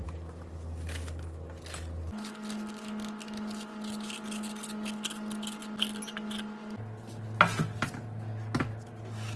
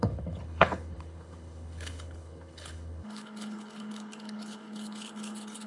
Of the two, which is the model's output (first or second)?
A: second